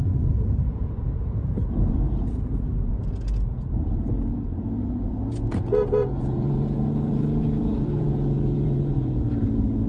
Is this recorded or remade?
remade